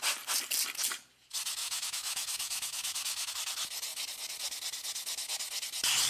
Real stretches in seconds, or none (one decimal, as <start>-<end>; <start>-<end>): 0.0-1.6; 3.3-6.1